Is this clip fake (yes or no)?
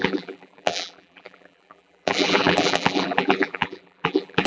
yes